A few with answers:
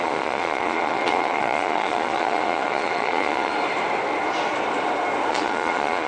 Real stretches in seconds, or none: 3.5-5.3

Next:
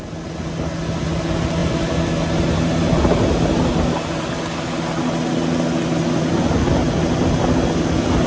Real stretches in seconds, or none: 0.0-8.3